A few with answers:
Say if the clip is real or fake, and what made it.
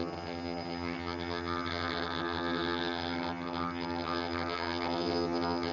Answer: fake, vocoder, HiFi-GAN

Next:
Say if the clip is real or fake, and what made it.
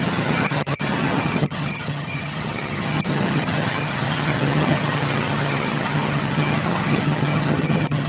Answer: fake, vocoder, HiFi-GAN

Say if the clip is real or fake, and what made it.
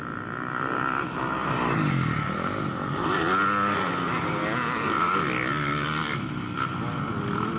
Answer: real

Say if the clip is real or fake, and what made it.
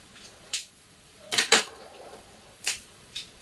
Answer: fake, vocoder, Vocos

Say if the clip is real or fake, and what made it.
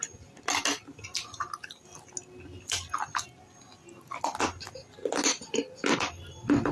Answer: real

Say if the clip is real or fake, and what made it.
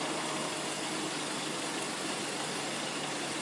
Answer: real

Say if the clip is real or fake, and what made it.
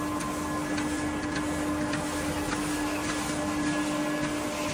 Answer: real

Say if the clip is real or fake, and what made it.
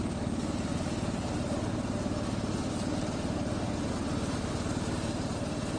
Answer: fake, vocoder, BigVGAN v2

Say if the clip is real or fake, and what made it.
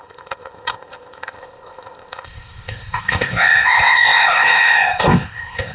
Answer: fake, codec, ZipCodec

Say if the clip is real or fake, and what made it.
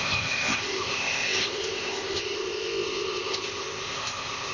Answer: fake, codec, ZipCodec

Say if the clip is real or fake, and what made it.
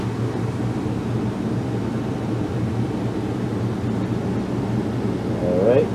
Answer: real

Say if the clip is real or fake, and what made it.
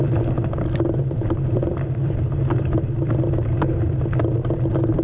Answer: real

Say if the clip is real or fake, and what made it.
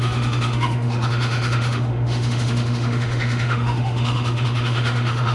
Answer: fake, autoencoder, DAC-VAE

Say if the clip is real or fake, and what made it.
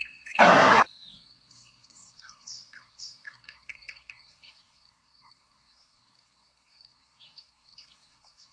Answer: fake, codec, SNAC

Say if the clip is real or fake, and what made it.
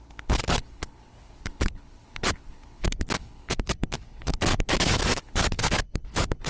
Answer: fake, codec, HILCodec